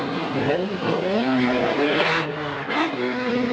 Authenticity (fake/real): fake